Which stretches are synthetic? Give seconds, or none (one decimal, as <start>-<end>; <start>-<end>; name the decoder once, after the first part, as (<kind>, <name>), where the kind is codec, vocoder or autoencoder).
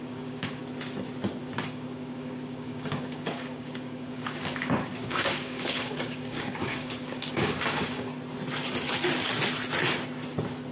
0.0-0.6 (codec, DAC); 1.4-8.1